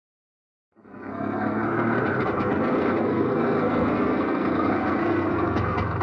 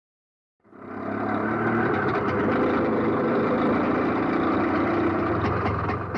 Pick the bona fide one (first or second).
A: second